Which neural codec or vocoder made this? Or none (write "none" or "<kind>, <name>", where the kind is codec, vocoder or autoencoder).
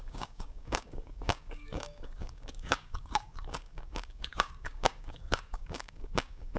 codec, DAC